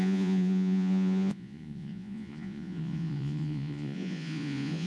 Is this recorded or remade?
remade